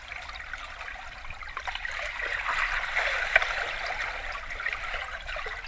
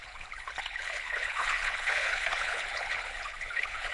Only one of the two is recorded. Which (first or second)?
first